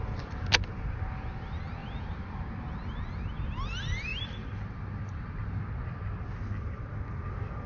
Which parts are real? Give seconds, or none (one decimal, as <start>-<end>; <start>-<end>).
0.0-1.8; 2.4-4.1; 5.6-7.7

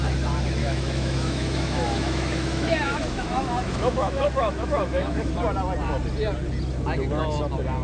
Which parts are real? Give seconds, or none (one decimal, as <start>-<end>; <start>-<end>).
0.0-0.6; 5.3-7.8

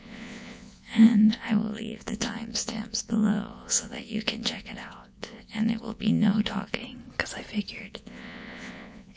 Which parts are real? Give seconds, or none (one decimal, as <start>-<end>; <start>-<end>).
6.8-7.8

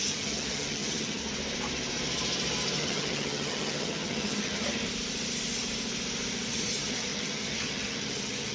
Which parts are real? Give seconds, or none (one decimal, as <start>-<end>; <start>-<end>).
1.2-2.8; 4.6-6.5

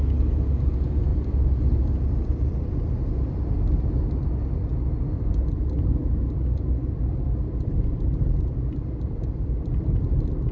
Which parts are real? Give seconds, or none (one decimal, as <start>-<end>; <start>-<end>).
0.0-1.1; 2.9-6.8

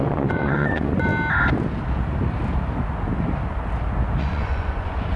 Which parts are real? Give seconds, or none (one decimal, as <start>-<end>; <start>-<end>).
1.1-4.2

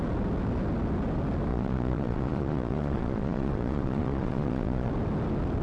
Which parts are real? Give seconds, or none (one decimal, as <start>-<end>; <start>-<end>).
0.0-1.5; 4.9-5.6

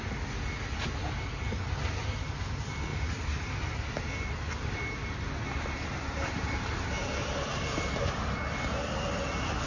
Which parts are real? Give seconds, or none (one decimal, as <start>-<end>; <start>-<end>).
0.0-9.7